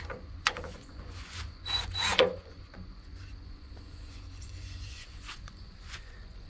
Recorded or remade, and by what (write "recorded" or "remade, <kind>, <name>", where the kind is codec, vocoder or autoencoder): remade, vocoder, Vocos